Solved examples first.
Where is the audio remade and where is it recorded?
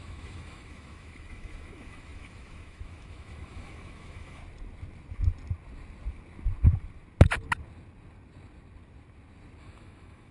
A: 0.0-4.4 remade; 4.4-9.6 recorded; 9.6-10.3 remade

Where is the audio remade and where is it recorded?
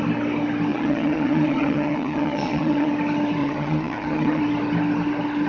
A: 0.0-0.7 recorded; 0.7-2.9 remade; 2.9-3.4 recorded; 3.4-4.4 remade; 4.4-5.5 recorded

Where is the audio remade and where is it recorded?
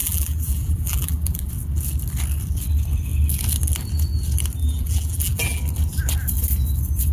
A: 0.0-1.5 remade; 1.5-4.6 recorded; 4.6-5.6 remade; 5.6-7.1 recorded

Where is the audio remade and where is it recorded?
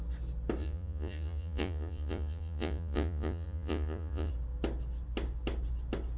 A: 0.0-0.6 recorded; 0.6-4.3 remade; 4.3-6.2 recorded